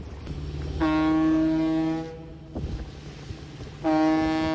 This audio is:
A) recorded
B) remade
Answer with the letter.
A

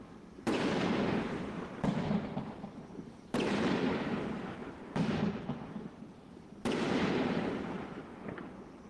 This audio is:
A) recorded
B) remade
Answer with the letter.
B